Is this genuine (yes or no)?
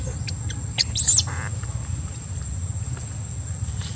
yes